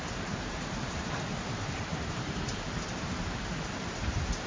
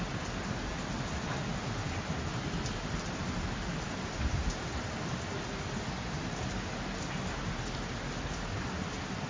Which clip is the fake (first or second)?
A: first